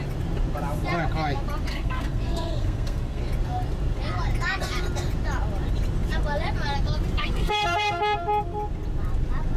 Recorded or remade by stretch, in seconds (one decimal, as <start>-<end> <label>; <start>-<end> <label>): 0.0-1.7 recorded; 1.7-3.2 remade; 3.2-7.2 recorded; 7.2-8.0 remade; 8.0-9.6 recorded